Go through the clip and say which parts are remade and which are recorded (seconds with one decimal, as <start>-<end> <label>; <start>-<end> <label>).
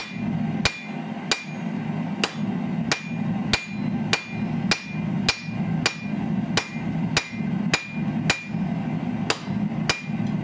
0.0-10.4 recorded